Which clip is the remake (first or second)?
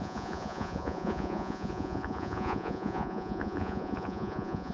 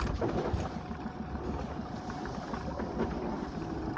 first